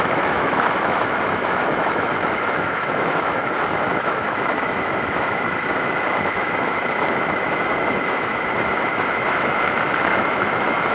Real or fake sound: fake